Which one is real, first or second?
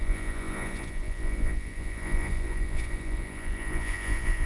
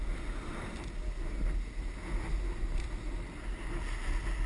second